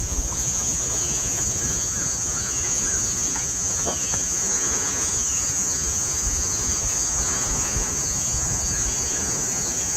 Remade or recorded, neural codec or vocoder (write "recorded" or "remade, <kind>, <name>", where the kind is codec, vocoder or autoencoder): remade, vocoder, Vocos